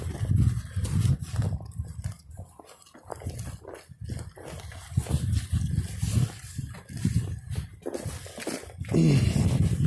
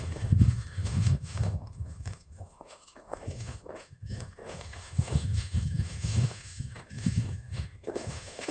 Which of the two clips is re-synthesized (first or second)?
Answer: second